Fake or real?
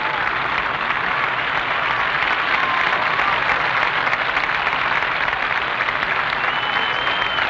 real